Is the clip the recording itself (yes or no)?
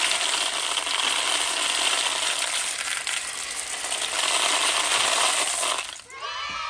yes